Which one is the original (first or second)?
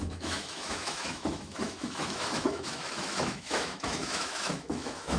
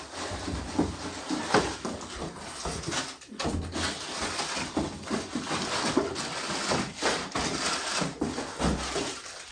second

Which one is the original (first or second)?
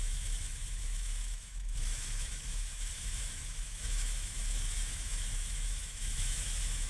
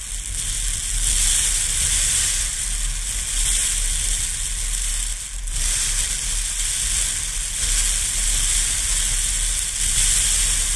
second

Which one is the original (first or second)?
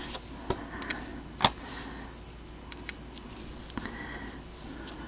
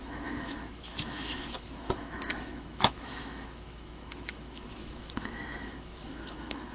first